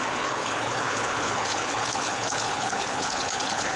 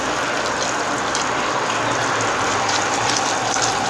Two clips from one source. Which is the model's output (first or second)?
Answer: first